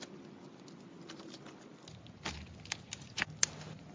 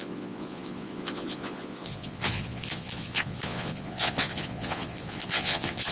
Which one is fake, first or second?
second